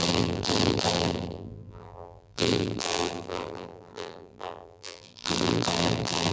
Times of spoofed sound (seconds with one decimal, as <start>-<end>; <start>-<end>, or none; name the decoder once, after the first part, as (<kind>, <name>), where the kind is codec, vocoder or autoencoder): 0.0-6.3 (vocoder, BigVGAN v2)